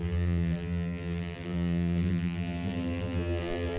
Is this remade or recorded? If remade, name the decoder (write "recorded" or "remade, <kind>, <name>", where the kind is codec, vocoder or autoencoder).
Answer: remade, vocoder, BigVGAN v2